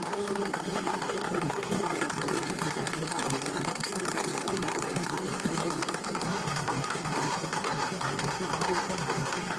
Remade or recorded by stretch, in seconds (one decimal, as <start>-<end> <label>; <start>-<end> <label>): 0.0-9.6 remade